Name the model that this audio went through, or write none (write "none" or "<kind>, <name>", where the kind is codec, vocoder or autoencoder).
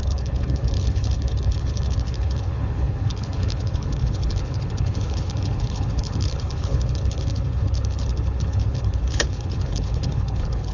codec, HILCodec